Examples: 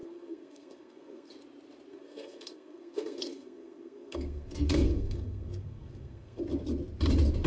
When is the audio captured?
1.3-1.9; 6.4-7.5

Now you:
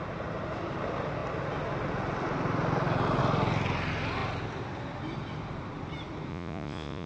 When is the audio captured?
0.0-6.3

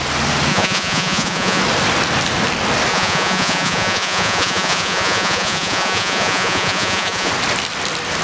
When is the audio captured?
0.0-0.5; 1.6-2.9; 7.3-8.2

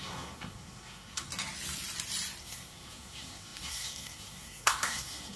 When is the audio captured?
1.3-2.4